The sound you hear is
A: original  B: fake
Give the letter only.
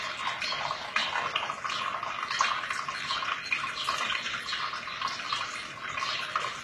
A